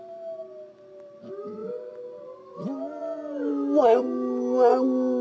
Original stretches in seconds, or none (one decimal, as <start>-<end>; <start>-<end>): 0.0-5.2